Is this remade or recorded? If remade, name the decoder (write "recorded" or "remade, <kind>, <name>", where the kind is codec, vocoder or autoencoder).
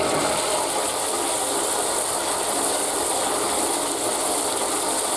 recorded